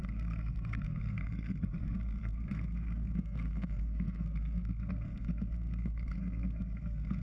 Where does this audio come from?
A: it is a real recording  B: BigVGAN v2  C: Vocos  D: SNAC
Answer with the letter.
D